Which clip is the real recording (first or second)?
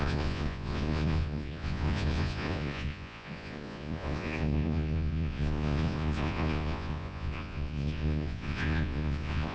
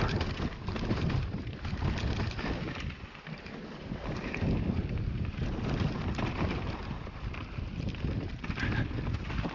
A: second